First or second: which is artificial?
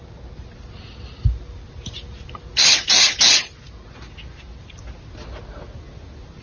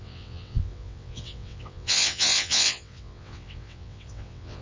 second